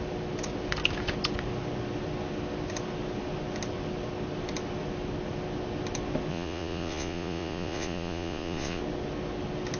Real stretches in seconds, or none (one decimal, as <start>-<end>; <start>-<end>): 0.0-6.3; 8.8-9.8